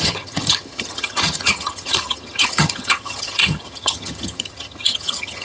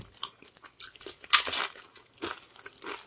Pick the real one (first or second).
second